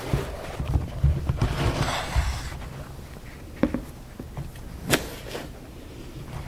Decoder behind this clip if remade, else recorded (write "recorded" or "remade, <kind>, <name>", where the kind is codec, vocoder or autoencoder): recorded